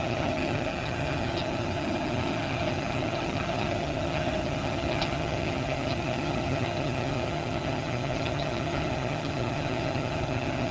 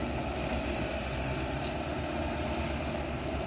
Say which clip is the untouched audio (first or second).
second